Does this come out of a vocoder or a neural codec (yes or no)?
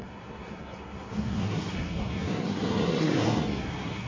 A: yes